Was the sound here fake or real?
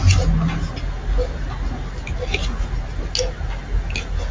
real